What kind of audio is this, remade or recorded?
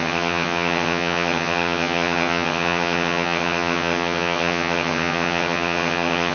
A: remade